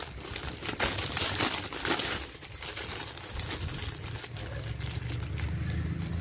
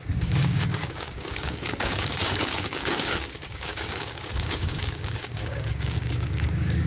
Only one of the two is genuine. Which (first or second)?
first